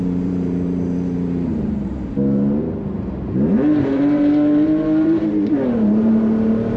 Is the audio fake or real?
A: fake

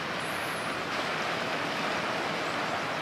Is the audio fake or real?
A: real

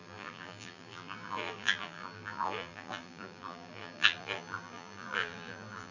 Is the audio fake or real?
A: fake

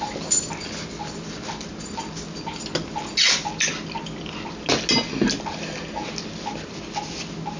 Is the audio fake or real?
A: real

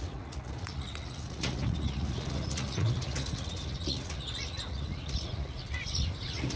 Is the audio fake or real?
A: fake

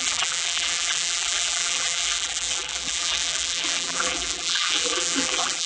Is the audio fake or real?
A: fake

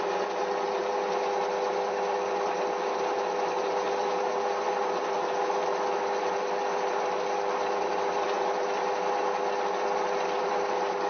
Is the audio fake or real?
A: real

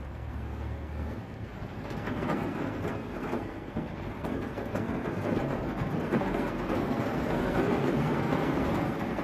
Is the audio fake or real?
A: fake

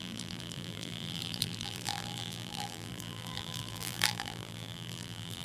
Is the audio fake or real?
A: fake